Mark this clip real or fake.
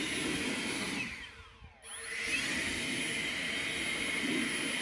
real